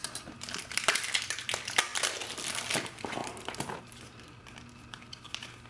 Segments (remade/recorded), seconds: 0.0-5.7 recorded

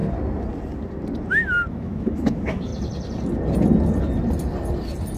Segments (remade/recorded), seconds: 0.0-1.7 recorded; 1.7-2.7 remade; 2.7-5.2 recorded